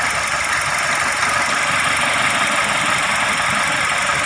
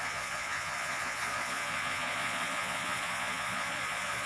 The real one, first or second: first